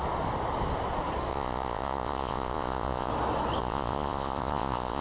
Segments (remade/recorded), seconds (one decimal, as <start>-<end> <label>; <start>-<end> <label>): 0.0-1.3 recorded; 1.3-3.1 remade; 3.1-3.6 recorded; 3.6-5.0 remade